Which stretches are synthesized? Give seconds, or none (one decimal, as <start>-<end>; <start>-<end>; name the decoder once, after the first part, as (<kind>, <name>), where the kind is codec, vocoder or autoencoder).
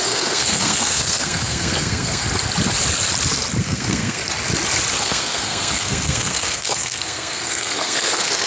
0.0-2.2 (codec, SNAC); 3.6-4.2; 5.0-8.5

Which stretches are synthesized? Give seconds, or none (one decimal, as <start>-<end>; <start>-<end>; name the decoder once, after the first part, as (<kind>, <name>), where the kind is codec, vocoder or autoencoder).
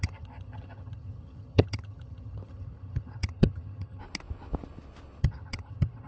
0.0-4.0 (vocoder, HiFi-GAN); 5.2-6.1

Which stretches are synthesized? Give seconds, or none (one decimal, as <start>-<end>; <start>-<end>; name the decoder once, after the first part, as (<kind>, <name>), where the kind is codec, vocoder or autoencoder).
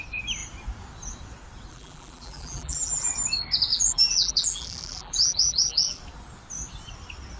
1.7-3.1 (vocoder, BigVGAN v2); 3.7-6.0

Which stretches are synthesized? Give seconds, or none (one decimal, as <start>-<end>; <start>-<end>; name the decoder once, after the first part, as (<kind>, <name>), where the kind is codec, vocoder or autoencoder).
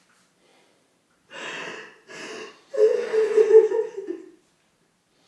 0.5-3.7 (vocoder, BigVGAN v2)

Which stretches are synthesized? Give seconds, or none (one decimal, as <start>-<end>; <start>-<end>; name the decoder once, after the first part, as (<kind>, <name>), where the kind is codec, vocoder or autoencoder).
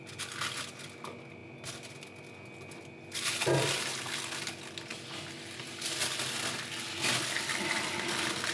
none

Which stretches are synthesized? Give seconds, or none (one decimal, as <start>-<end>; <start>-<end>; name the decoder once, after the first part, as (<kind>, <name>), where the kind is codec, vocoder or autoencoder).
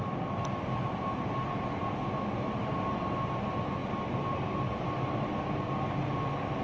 none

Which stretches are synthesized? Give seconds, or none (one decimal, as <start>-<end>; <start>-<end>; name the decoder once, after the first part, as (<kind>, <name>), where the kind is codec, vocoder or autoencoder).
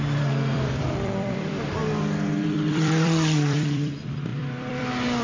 0.0-1.8 (vocoder, BigVGAN v2); 2.4-5.2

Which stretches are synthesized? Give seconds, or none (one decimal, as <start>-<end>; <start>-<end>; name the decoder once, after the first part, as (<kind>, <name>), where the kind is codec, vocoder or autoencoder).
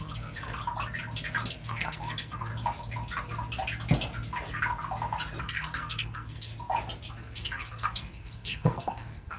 0.0-0.6 (codec, SNAC); 1.5-2.5; 5.4-6.5; 7.1-9.4